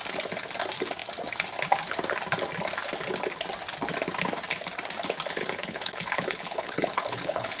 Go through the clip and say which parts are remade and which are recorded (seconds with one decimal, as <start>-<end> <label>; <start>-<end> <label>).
0.0-5.4 recorded; 5.4-7.6 remade